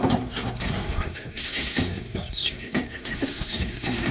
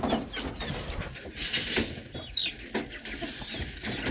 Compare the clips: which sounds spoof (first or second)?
first